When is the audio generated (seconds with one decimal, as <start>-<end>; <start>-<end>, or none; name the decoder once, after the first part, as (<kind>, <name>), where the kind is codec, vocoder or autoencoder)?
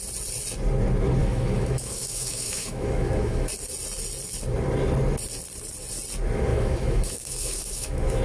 1.2-3.5 (autoencoder, DAC-VAE); 6.5-8.2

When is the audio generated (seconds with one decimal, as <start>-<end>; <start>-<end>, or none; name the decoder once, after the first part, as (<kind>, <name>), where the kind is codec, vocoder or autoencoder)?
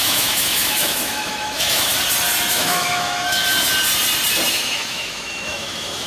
0.0-1.9 (autoencoder, DAC-VAE); 2.5-3.4; 4.5-6.1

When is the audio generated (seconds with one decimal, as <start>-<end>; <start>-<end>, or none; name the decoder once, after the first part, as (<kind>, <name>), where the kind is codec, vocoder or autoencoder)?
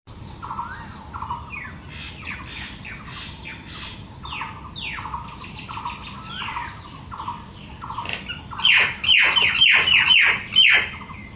none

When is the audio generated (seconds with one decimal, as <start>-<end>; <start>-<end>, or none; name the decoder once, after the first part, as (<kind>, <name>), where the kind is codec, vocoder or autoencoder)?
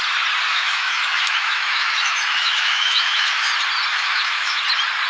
0.5-3.5 (autoencoder, DAC-VAE); 3.9-4.6